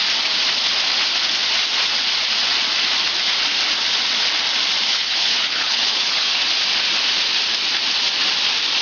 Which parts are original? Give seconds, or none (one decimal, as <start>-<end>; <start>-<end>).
0.0-4.9; 6.4-8.8